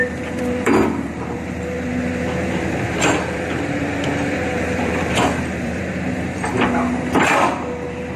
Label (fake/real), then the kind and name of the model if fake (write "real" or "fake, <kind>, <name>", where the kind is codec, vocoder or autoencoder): fake, vocoder, BigVGAN v2